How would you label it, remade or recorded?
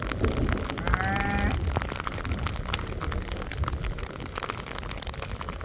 recorded